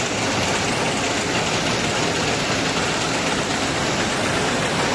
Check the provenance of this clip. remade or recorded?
recorded